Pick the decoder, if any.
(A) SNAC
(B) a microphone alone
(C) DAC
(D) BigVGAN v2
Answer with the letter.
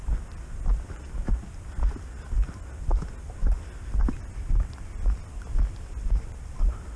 B